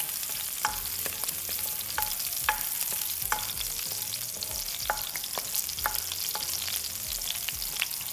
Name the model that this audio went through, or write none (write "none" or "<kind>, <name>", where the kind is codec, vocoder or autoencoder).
none